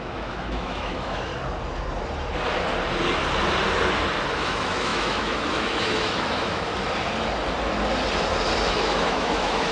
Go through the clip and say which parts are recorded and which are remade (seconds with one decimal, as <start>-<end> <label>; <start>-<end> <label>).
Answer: 0.0-1.3 remade; 1.3-4.4 recorded; 4.4-6.7 remade; 6.7-8.7 recorded; 8.7-9.7 remade